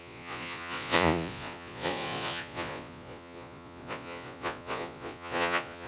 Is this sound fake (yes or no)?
yes